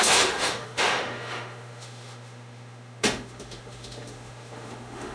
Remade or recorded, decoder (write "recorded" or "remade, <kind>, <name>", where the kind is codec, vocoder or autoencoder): remade, autoencoder, DAC-VAE